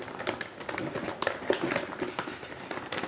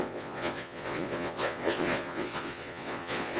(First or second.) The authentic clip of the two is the first